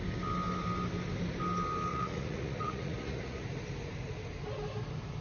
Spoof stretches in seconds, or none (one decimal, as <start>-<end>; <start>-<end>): 1.9-3.4